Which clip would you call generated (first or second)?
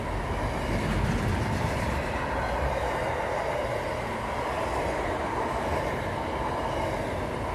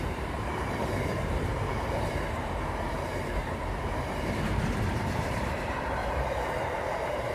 second